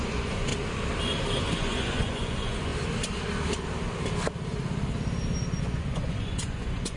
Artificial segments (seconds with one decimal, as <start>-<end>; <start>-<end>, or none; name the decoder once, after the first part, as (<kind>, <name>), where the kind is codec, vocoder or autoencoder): 0.0-0.5 (vocoder, Vocos); 1.4-2.7; 5.6-7.0